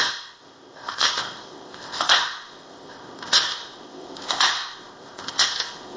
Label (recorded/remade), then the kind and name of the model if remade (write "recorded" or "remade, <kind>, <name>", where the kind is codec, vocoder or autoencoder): remade, codec, ZipCodec